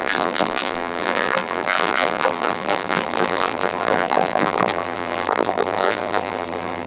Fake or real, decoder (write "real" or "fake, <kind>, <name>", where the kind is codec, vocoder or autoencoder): fake, vocoder, BigVGAN v2